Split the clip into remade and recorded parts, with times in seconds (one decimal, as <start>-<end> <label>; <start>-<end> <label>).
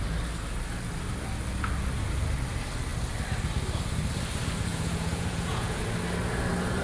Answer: 0.0-4.7 recorded; 4.7-5.8 remade; 5.8-6.8 recorded